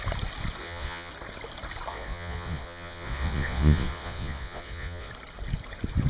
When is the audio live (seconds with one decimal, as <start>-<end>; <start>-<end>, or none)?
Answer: 0.0-0.6; 1.1-1.9; 5.1-6.1